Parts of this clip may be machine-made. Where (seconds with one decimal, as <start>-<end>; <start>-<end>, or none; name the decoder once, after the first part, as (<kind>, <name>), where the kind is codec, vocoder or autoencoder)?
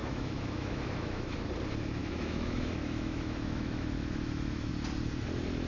0.0-1.5 (autoencoder, DAC-VAE); 2.0-4.7